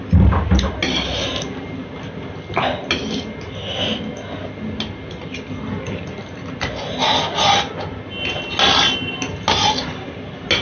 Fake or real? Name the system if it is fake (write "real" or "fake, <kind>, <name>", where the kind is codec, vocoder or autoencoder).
real